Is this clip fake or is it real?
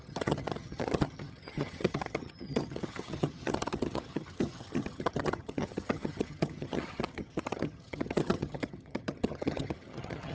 fake